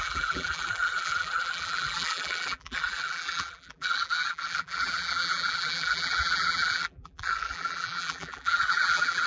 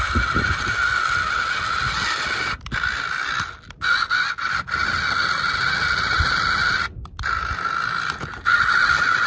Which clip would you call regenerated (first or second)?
first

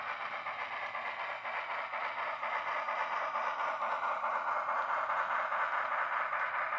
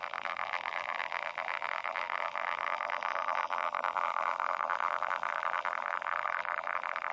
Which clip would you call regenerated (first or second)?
second